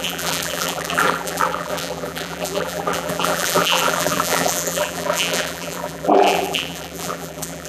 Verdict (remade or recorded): remade